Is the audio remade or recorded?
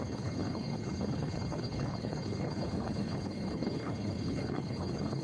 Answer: remade